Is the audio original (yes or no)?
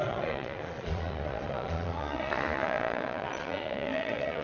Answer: no